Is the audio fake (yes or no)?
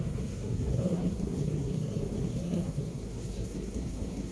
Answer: yes